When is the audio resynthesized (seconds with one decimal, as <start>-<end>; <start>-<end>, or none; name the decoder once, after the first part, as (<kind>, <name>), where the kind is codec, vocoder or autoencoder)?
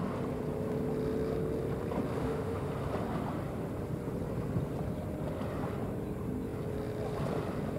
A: 2.2-2.7 (autoencoder, DAC-VAE)